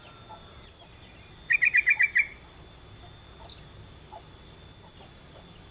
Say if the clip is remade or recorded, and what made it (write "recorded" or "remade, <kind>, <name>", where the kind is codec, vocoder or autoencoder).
recorded